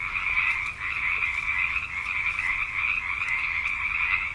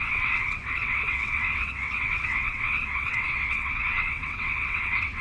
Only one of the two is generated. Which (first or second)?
second